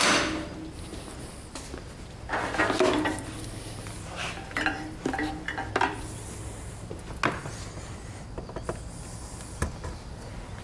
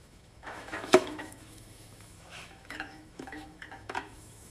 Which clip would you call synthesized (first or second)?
second